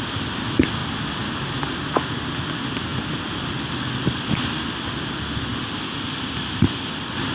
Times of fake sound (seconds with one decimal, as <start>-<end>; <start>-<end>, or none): none